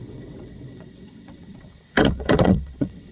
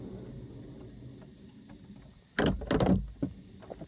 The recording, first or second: second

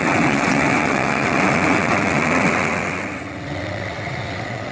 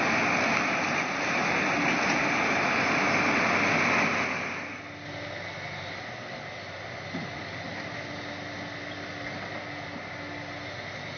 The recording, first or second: second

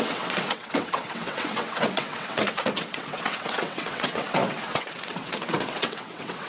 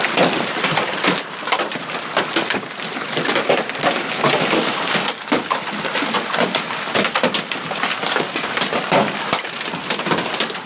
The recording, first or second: second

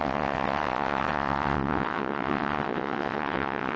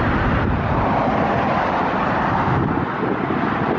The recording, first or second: second